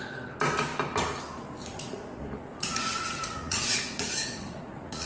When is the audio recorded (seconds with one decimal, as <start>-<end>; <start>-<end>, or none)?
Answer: 0.0-1.7